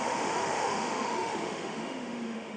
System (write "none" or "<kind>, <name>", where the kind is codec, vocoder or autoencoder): autoencoder, DAC-VAE